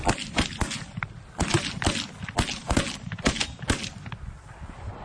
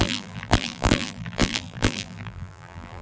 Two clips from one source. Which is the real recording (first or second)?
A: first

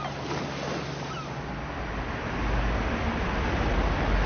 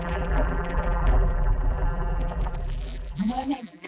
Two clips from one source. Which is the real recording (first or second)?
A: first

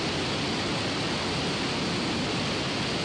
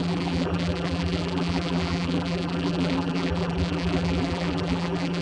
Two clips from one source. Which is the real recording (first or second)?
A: first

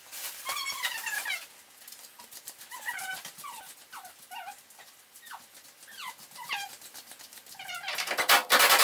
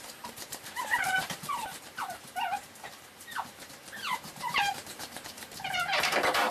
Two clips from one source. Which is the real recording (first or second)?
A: first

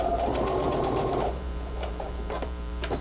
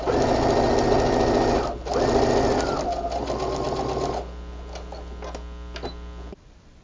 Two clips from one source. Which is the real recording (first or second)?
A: second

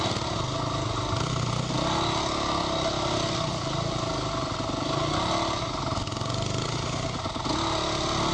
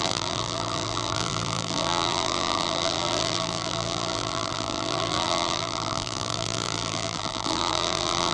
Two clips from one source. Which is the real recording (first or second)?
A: first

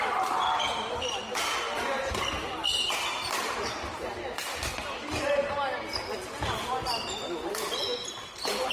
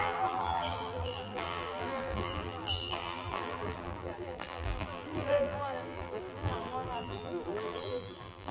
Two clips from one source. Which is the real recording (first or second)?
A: first